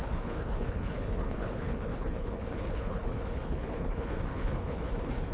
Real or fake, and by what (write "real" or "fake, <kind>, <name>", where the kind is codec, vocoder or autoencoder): fake, codec, HILCodec